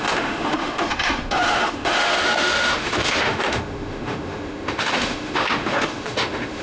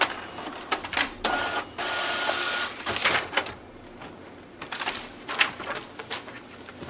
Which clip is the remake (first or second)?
first